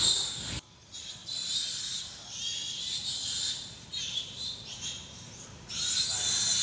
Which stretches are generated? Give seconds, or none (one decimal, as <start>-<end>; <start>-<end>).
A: none